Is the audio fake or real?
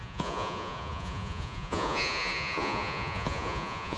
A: fake